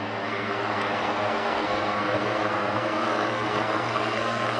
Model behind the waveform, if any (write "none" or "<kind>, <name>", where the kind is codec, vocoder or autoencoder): codec, SNAC